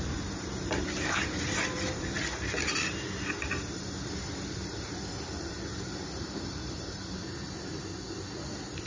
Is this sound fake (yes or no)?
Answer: yes